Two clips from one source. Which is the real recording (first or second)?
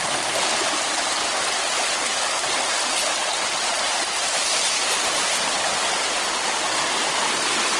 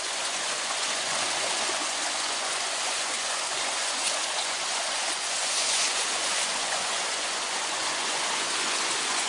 first